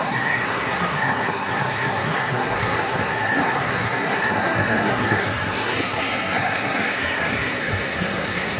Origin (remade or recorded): remade